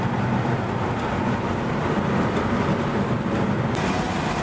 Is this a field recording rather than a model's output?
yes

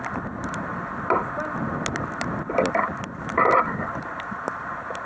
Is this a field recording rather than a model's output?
yes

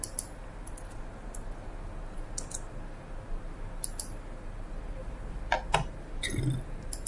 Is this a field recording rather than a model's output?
yes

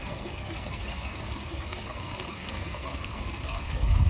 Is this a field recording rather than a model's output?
no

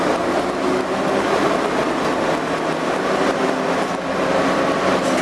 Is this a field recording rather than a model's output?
yes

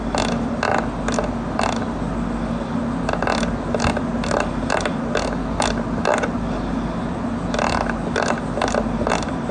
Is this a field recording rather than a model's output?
yes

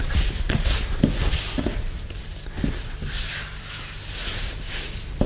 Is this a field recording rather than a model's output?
yes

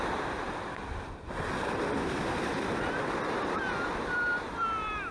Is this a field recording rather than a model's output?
no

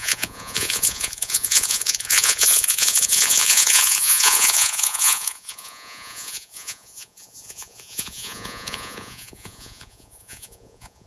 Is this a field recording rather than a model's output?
no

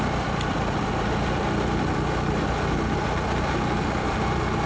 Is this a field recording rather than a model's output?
yes